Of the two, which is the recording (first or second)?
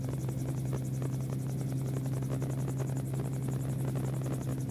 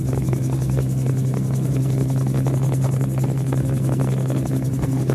first